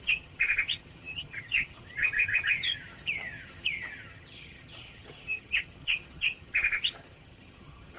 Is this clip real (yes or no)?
no